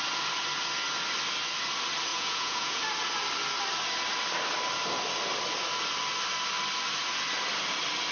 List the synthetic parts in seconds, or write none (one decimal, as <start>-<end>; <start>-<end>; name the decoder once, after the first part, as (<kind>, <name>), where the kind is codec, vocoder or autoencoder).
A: 2.1-2.8 (vocoder, Vocos)